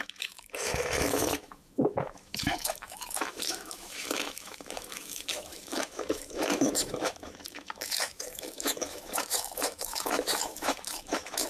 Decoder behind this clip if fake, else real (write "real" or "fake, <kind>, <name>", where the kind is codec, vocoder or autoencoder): fake, autoencoder, DAC-VAE